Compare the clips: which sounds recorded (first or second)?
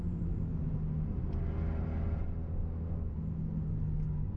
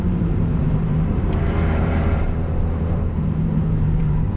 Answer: first